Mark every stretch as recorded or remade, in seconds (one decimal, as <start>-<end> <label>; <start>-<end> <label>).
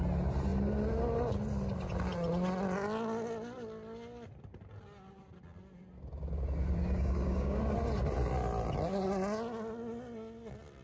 0.0-6.8 recorded; 6.8-7.6 remade; 7.6-10.8 recorded